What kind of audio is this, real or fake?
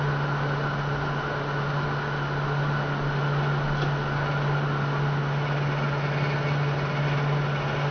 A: real